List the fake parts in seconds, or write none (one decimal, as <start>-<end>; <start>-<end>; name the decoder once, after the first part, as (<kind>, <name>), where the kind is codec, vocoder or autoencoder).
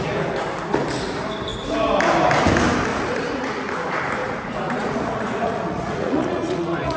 2.9-3.5 (vocoder, Vocos); 4.2-7.0